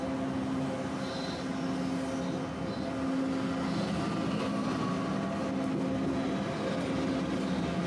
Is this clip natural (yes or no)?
yes